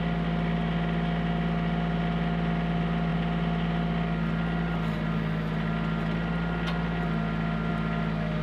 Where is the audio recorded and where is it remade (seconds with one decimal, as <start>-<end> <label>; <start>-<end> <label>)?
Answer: 0.0-8.4 recorded